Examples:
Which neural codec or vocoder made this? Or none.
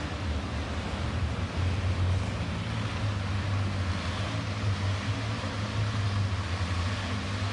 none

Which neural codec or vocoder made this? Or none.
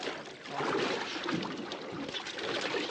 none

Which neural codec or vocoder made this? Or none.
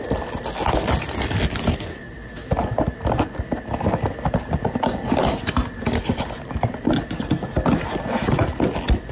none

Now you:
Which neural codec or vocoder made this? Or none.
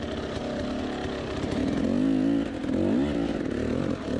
none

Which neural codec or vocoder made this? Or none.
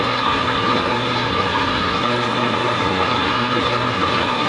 codec, SNAC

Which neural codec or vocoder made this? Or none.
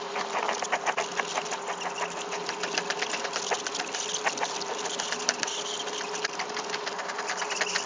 none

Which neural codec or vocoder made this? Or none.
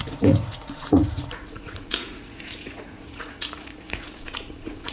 vocoder, Vocos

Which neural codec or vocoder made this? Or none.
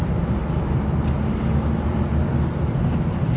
none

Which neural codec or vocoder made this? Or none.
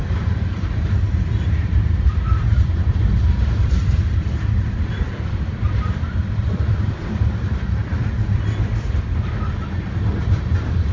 vocoder, BigVGAN v2